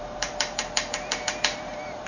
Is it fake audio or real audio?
fake